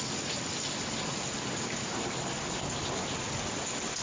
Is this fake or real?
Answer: real